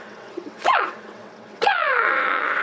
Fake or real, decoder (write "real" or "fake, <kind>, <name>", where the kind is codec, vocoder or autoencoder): fake, vocoder, WaveNeXt